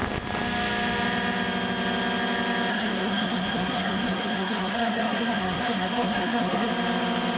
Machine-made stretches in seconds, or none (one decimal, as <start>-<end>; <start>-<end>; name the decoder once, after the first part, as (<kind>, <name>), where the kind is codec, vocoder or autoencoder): 2.7-6.7 (codec, SNAC)